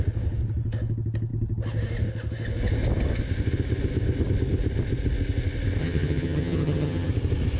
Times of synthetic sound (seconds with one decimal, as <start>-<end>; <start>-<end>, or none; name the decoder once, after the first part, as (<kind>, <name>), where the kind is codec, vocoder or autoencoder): 5.8-7.1 (vocoder, HiFi-GAN)